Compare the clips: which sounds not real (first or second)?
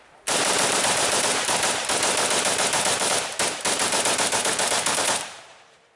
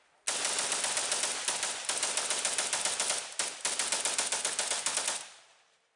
first